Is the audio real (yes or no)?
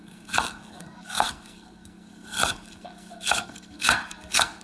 no